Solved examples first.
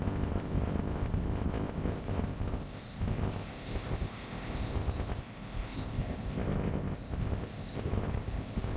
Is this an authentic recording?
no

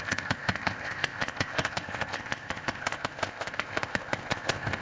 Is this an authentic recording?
no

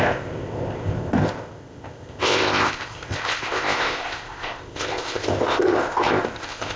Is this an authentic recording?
no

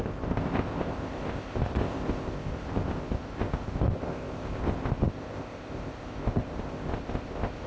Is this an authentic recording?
no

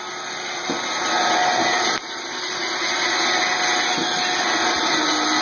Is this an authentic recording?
yes